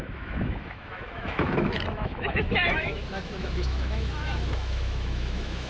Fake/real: fake